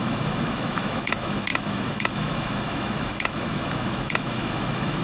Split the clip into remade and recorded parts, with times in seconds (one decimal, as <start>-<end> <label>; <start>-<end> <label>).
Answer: 0.0-5.0 remade